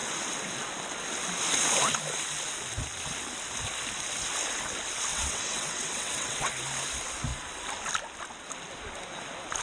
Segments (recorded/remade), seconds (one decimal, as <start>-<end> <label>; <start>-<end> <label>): 0.0-5.1 recorded; 5.1-6.5 remade; 6.5-9.6 recorded